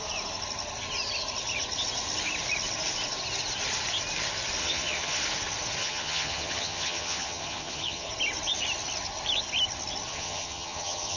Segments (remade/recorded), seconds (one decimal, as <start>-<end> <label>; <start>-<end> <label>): 0.0-4.6 recorded; 4.6-5.2 remade; 5.2-5.8 recorded; 5.8-8.1 remade; 8.1-10.1 recorded; 10.1-11.2 remade